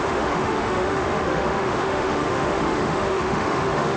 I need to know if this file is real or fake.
fake